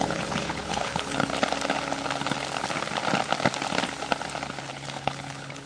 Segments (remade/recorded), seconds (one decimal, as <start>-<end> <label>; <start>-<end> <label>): 0.0-1.3 remade; 1.3-4.7 recorded; 4.7-5.7 remade